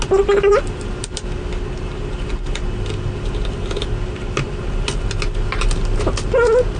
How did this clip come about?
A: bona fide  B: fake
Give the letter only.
A